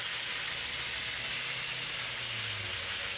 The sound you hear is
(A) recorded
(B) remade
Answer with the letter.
A